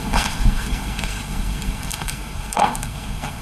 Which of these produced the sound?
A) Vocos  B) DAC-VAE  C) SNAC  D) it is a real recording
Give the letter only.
C